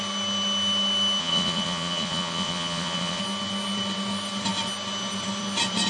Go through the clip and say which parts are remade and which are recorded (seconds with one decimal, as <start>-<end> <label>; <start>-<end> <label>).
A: 0.0-1.2 recorded; 1.2-3.2 remade; 3.2-5.9 recorded